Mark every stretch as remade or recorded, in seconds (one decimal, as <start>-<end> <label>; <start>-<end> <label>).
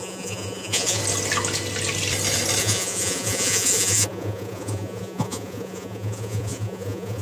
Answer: 0.0-1.0 remade; 1.0-2.6 recorded; 2.6-7.2 remade